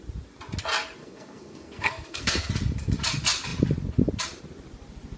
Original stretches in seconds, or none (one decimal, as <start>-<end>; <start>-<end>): 0.0-1.0; 2.5-5.2